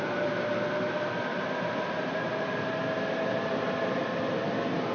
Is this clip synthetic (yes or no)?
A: no